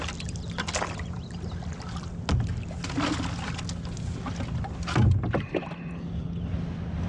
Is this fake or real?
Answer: real